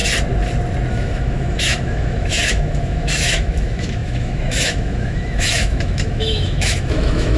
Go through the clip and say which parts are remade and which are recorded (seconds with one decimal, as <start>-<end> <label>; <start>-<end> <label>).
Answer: 0.0-0.9 recorded; 0.9-7.4 remade